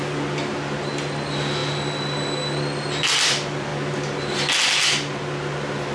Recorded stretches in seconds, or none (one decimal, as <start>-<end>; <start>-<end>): 0.0-5.9